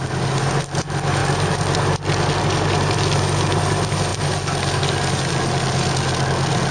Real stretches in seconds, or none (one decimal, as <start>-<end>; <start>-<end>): 0.0-6.7